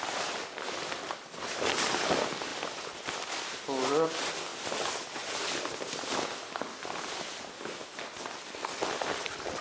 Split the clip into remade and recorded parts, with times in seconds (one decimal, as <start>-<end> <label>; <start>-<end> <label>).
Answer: 0.0-2.5 recorded; 2.5-4.1 remade; 4.1-9.6 recorded